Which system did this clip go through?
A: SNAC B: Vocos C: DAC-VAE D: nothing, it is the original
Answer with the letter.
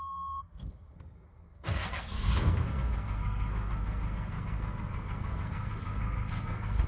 A